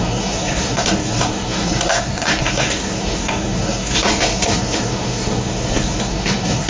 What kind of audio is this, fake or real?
fake